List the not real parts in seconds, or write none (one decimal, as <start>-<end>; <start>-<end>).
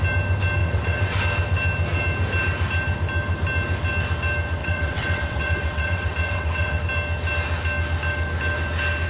0.6-1.2; 4.6-6.8